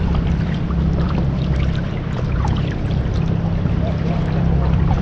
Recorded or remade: remade